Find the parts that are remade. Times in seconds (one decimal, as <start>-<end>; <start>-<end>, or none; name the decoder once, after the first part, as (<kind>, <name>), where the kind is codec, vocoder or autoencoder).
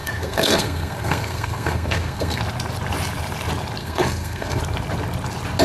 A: 0.0-2.4 (codec, SNAC); 3.8-4.6